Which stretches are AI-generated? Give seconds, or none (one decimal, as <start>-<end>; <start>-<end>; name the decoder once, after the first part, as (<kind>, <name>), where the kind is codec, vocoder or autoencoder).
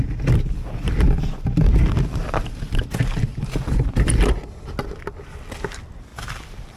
3.3-3.9 (vocoder, BigVGAN v2)